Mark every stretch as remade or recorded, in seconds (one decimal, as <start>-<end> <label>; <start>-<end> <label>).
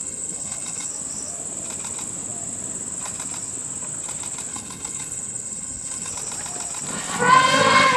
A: 0.0-0.9 remade; 0.9-4.5 recorded; 4.5-6.1 remade; 6.1-8.0 recorded